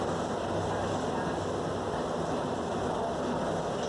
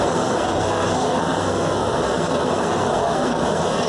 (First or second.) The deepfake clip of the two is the second